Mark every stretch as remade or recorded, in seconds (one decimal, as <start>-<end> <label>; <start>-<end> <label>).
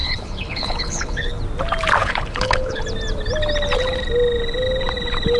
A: 0.0-1.4 remade; 1.4-2.0 recorded; 2.0-2.8 remade; 2.8-5.4 recorded